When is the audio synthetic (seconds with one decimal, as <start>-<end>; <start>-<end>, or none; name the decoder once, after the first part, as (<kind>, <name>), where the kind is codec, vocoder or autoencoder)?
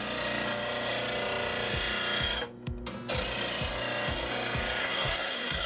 4.8-5.7 (codec, SNAC)